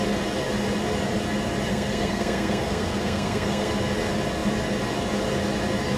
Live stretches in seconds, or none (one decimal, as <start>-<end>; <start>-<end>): 0.0-1.7; 3.7-6.0